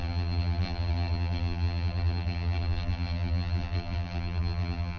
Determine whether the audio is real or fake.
fake